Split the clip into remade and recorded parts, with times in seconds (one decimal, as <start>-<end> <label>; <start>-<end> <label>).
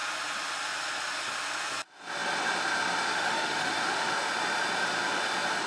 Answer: 0.0-3.1 recorded; 3.1-4.1 remade; 4.1-5.7 recorded